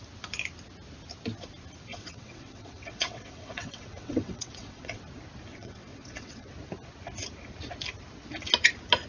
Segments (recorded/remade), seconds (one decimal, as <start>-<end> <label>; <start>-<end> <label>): 0.0-1.9 recorded; 1.9-5.0 remade; 5.0-5.5 recorded; 5.5-6.5 remade; 6.5-9.1 recorded